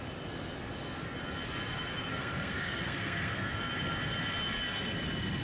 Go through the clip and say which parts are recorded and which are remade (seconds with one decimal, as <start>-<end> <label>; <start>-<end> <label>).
0.0-2.1 recorded; 2.1-3.6 remade; 3.6-5.4 recorded